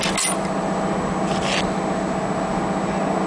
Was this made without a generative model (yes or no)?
yes